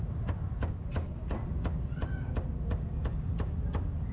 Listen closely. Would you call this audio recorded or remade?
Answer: recorded